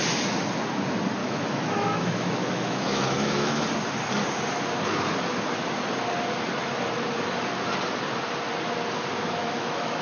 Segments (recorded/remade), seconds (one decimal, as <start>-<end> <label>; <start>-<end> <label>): 0.0-1.2 recorded; 1.2-3.5 remade; 3.5-9.4 recorded; 9.4-10.0 remade